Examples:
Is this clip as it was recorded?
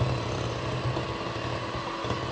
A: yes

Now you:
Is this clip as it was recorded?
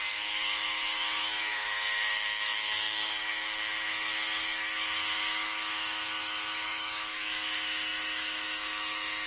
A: no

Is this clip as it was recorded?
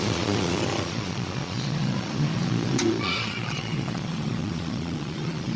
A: no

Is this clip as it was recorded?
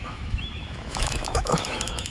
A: no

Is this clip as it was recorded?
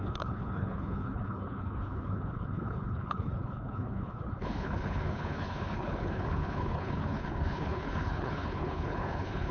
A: no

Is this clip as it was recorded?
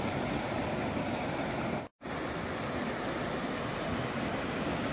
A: yes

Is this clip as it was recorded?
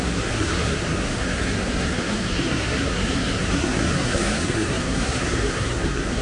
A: no